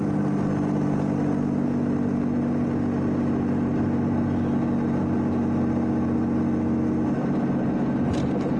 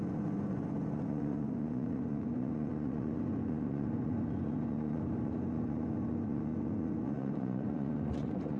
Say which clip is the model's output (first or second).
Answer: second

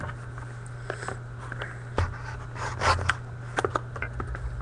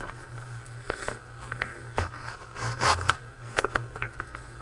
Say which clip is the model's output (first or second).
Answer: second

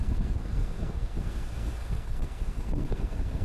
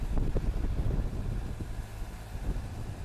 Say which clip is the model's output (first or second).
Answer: first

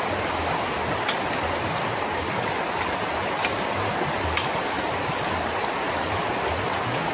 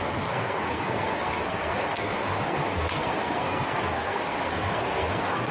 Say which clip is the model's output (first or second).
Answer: second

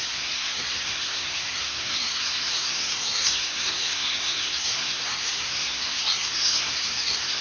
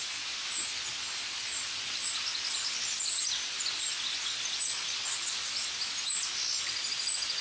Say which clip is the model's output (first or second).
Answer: first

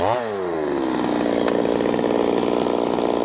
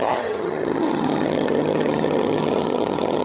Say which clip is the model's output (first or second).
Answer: second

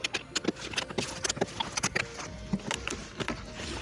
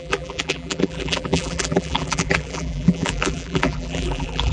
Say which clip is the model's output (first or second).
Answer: second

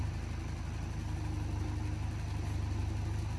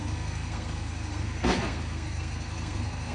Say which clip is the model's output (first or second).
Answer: second